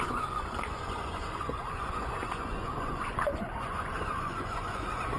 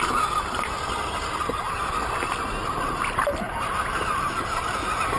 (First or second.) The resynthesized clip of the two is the first